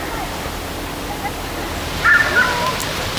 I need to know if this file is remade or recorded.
recorded